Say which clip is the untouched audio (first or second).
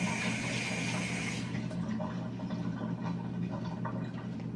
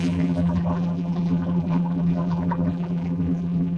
first